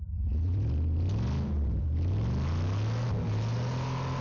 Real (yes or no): yes